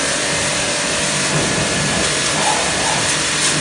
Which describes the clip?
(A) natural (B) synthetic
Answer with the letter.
B